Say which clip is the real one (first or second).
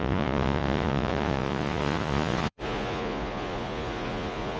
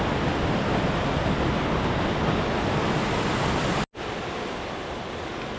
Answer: second